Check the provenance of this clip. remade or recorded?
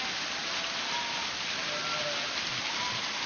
recorded